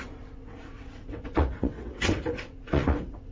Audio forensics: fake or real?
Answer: fake